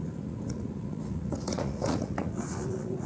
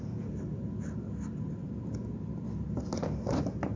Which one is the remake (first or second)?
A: first